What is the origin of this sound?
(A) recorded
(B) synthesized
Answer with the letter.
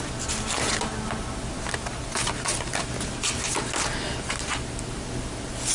A